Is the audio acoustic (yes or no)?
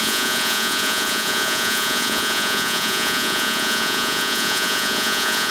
no